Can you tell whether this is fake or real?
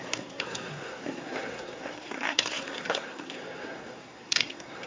fake